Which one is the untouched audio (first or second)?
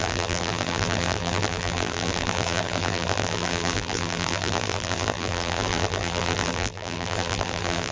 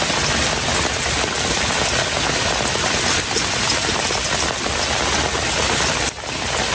second